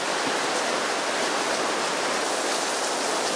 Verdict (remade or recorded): recorded